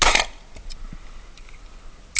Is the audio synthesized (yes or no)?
no